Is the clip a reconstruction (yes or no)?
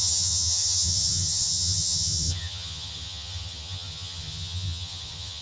yes